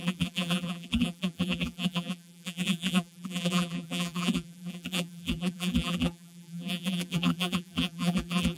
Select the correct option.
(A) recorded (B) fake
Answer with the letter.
B